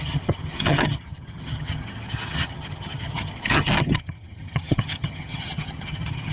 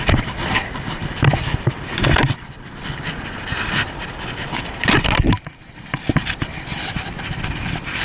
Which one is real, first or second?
second